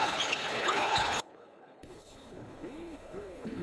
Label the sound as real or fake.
fake